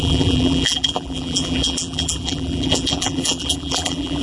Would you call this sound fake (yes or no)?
yes